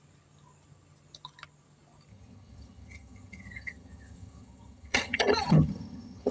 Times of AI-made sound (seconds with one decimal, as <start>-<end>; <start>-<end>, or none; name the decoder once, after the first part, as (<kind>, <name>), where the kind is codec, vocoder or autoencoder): 2.1-6.3 (vocoder, HiFi-GAN)

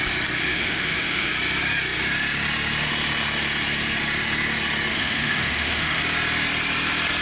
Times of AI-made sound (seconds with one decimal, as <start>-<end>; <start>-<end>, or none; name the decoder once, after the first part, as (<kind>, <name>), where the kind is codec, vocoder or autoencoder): 0.4-1.3 (autoencoder, DAC-VAE); 4.9-6.0